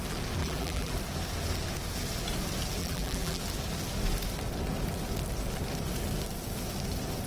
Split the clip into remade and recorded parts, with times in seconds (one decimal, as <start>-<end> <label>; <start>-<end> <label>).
0.0-0.4 recorded; 0.4-0.9 remade; 0.9-2.8 recorded; 2.8-3.4 remade; 3.4-7.3 recorded

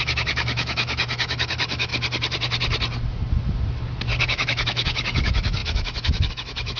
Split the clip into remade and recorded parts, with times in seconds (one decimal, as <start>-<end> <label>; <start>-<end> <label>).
0.0-1.9 remade; 1.9-4.2 recorded; 4.2-6.8 remade